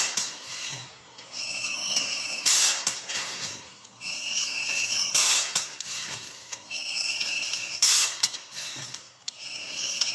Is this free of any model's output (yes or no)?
no